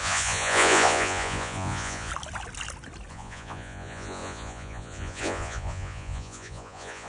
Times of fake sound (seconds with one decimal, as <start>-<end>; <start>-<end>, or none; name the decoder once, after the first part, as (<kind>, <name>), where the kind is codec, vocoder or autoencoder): 0.0-2.1 (vocoder, Vocos); 3.1-7.1